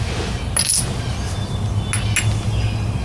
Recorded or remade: recorded